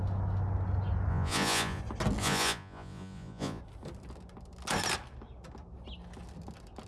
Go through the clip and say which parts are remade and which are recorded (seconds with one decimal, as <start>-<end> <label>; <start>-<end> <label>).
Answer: 0.0-1.1 recorded; 1.1-1.8 remade; 1.8-2.2 recorded; 2.2-3.6 remade; 3.6-6.9 recorded